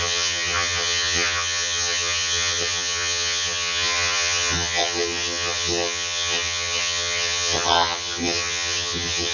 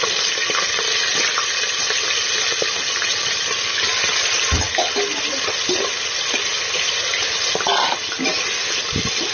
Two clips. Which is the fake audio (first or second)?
first